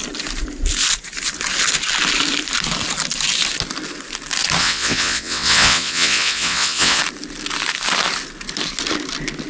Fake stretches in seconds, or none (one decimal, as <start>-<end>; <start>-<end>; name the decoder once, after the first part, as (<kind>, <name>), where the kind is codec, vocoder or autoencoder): 4.6-7.0 (vocoder, WaveNeXt)